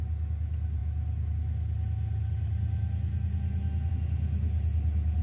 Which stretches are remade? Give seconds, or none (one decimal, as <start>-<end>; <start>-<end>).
none